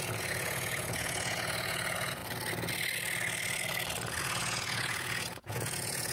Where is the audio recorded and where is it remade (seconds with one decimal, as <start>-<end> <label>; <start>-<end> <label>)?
0.0-2.2 remade; 2.2-4.2 recorded; 4.2-6.1 remade